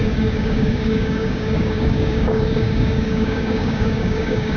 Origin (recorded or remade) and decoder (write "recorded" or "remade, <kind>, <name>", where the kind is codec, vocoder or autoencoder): remade, codec, DAC